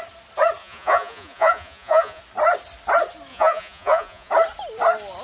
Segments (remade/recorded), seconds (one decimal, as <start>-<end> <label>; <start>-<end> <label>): 0.0-0.6 recorded; 0.6-2.2 remade; 2.2-3.3 recorded; 3.3-4.3 remade; 4.3-5.2 recorded